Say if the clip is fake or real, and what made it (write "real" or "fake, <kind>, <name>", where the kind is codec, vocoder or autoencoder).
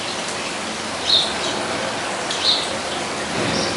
real